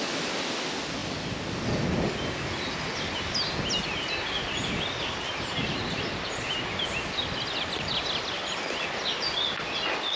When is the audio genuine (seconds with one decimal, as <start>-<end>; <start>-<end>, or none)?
0.0-10.2